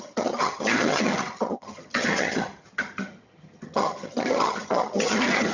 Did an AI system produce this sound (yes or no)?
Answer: yes